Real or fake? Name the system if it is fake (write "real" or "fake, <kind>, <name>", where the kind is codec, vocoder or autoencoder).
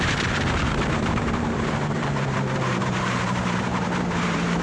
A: fake, vocoder, BigVGAN v2